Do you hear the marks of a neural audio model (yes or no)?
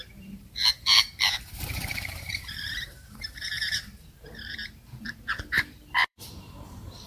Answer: yes